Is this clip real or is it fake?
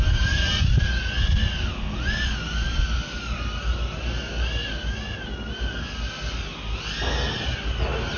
real